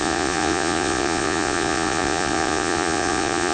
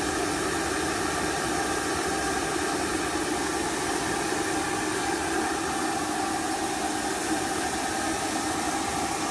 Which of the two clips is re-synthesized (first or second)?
first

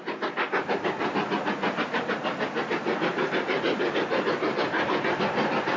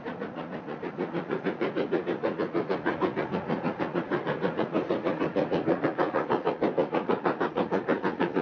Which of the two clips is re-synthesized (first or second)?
second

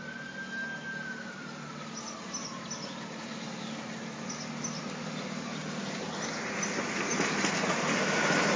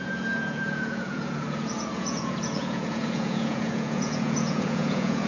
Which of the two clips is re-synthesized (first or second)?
second